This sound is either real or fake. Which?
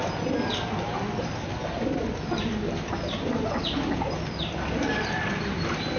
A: real